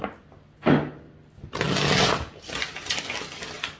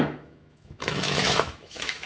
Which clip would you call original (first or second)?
first